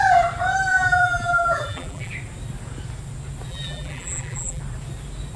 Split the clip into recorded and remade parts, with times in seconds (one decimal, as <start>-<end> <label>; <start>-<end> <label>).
0.0-0.7 recorded; 0.7-2.1 remade; 2.1-3.5 recorded; 3.5-4.6 remade; 4.6-5.4 recorded